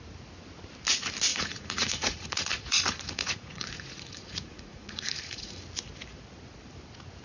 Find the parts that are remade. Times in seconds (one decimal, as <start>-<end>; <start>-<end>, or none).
1.3-5.6